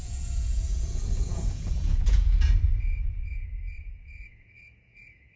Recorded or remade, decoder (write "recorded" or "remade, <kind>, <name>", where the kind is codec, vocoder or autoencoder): remade, vocoder, Vocos